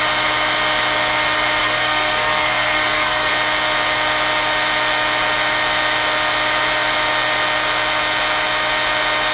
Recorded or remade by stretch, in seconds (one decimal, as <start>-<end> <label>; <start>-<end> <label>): 0.0-1.6 recorded; 1.6-3.3 remade; 3.3-9.3 recorded